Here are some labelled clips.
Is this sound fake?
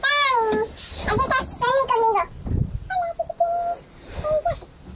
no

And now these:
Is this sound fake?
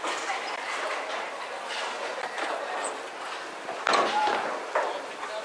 no